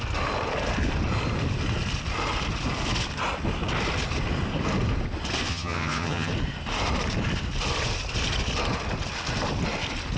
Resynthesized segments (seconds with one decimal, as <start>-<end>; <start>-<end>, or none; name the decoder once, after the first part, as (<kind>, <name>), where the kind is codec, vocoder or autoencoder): 5.5-6.3 (vocoder, HiFi-GAN)